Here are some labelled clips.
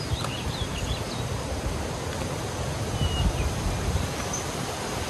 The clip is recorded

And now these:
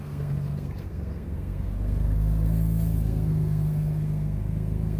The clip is remade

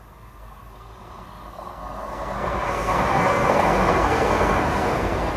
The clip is remade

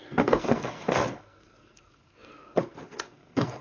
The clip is remade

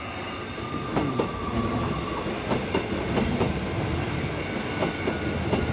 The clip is recorded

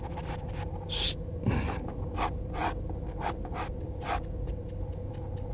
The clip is recorded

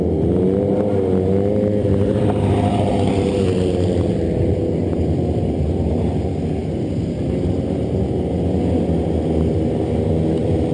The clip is recorded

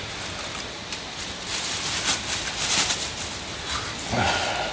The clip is recorded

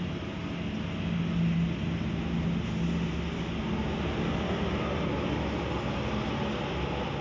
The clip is recorded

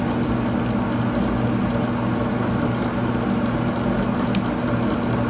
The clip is recorded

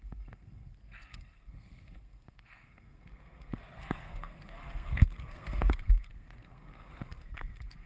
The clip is remade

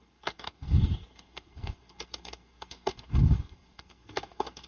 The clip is remade